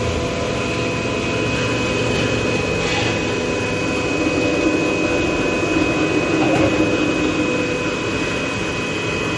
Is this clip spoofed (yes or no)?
no